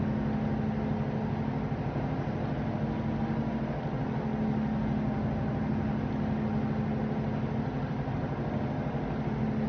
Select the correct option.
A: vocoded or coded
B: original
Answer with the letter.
B